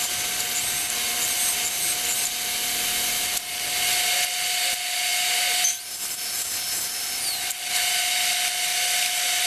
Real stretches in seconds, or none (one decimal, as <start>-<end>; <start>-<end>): 0.0-9.5